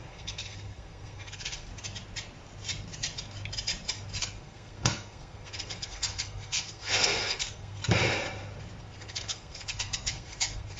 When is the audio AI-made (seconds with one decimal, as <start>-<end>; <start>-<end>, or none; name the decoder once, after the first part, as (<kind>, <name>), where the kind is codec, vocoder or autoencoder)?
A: 0.0-1.7 (codec, SNAC); 4.2-7.8; 8.8-10.8